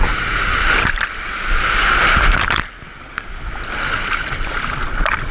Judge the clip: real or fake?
real